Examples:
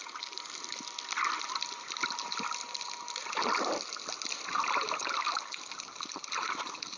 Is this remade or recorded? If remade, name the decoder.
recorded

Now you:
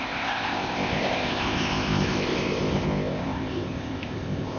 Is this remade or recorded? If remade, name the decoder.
remade, codec, ZipCodec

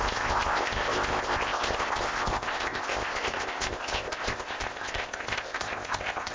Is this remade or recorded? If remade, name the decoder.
remade, codec, ZipCodec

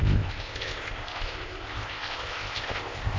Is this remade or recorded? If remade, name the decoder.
remade, codec, ZipCodec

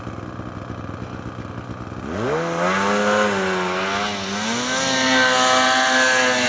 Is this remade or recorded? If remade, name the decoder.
recorded